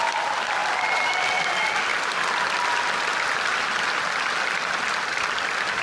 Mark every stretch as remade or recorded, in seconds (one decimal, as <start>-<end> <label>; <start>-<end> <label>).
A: 0.0-5.8 recorded